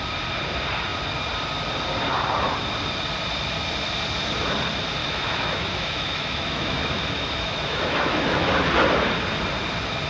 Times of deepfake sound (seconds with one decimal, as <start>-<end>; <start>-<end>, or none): 5.0-8.5